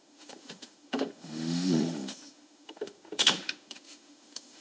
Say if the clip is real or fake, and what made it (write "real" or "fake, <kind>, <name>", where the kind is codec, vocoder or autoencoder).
fake, autoencoder, DAC-VAE